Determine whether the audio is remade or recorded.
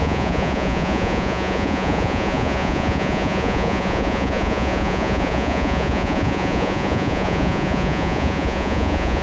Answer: remade